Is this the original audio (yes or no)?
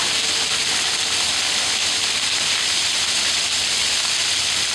yes